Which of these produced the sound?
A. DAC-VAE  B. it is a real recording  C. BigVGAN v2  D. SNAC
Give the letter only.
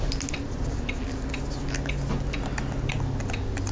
B